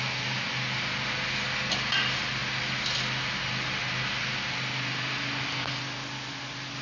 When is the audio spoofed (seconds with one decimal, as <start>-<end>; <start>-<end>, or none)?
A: none